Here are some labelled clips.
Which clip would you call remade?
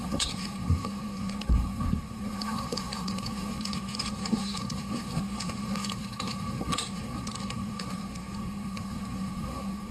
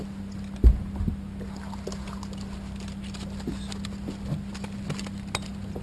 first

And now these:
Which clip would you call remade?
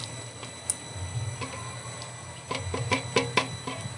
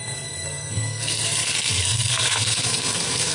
second